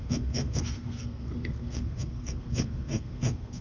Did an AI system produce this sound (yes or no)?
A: yes